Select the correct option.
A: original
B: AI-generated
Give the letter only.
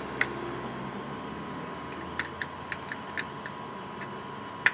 A